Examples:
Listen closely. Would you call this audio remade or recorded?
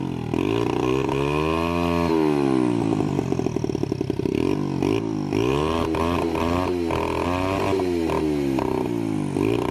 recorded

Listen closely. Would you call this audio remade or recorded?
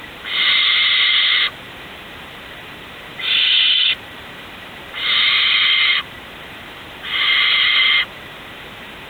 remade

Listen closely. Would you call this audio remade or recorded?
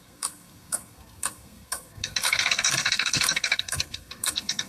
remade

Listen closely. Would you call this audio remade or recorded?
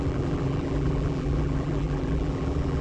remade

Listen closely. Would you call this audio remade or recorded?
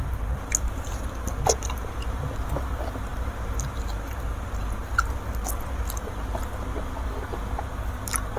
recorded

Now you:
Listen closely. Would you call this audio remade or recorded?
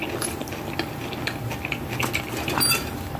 recorded